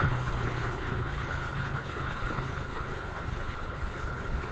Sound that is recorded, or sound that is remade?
remade